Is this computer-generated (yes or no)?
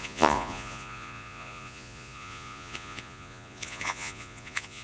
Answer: yes